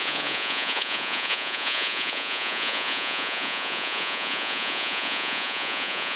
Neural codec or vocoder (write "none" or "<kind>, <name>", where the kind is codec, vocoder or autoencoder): vocoder, Vocos